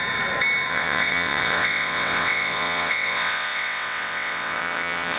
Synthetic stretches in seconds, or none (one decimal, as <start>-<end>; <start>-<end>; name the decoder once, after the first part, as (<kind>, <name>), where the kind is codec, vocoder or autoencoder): 0.7-5.2 (vocoder, WaveNeXt)